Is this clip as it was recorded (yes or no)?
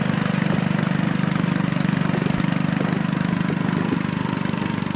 yes